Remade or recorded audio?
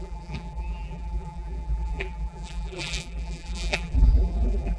remade